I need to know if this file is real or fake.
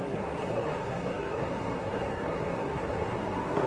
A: fake